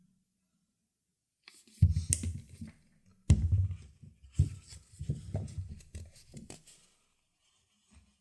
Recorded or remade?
recorded